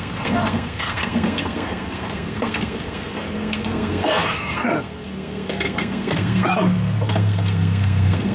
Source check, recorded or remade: remade